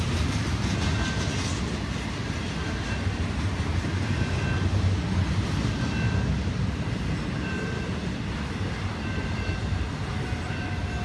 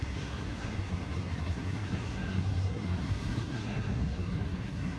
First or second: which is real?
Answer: first